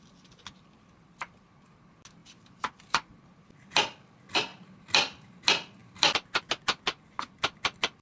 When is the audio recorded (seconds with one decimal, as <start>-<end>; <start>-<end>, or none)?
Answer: 0.0-2.2; 2.7-4.5; 5.3-8.0